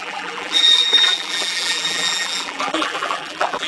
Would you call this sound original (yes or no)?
no